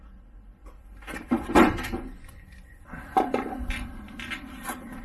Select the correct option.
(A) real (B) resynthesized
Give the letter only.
A